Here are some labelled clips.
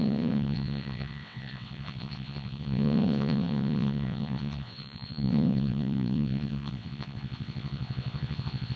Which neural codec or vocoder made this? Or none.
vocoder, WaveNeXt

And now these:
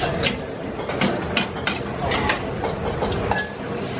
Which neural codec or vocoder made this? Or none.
none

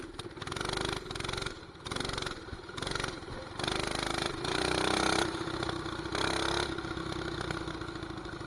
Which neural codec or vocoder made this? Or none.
none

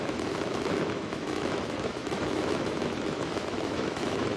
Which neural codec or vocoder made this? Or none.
autoencoder, DAC-VAE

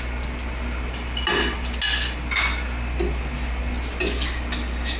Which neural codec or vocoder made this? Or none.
none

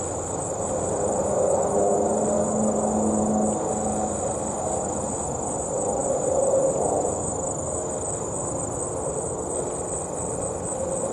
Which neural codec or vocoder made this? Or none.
none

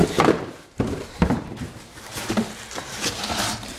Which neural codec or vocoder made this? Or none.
vocoder, BigVGAN v2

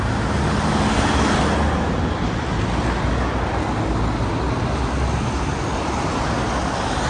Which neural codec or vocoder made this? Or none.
none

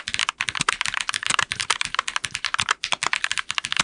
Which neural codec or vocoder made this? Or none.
none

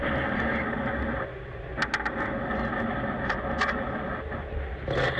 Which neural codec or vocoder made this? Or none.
none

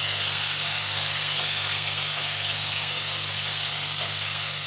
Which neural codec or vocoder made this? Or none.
codec, SNAC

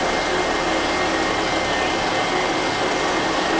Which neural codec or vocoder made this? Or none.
none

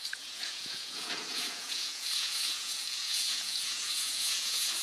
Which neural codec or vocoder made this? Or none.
vocoder, Vocos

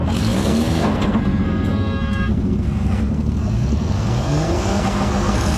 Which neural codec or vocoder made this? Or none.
codec, SNAC